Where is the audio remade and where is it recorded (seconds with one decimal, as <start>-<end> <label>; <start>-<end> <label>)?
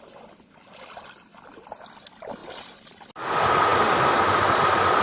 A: 0.0-5.0 recorded